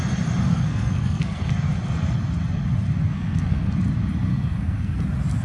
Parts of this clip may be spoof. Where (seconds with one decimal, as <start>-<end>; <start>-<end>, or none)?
0.5-1.5; 3.1-3.7; 4.3-5.0